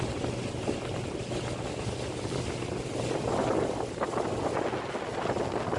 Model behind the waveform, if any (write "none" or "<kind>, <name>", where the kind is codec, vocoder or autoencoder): none